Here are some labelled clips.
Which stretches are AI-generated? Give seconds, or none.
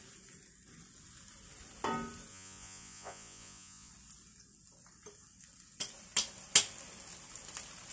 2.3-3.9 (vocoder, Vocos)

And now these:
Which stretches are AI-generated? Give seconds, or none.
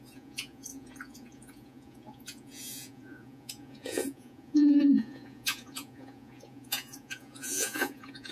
0.0-8.3 (vocoder, Vocos)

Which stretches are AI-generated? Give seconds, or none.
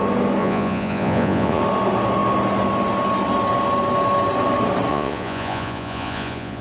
0.4-1.6 (vocoder, Vocos); 4.9-6.6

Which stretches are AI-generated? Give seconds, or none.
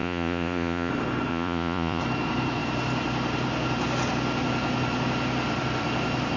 0.0-0.9 (vocoder, Vocos); 1.3-2.0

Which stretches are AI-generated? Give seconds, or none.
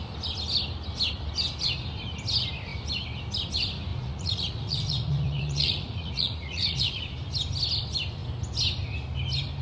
3.9-7.0 (vocoder, Vocos)